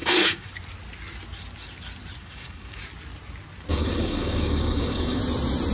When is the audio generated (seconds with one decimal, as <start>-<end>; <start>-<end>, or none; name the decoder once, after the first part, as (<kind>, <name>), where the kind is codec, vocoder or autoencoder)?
0.0-0.5 (codec, DAC); 2.2-2.8; 3.7-5.2